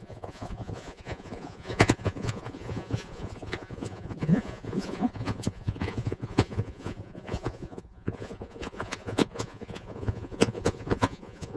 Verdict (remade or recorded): remade